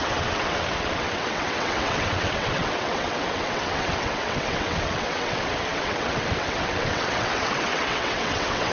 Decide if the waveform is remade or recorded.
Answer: remade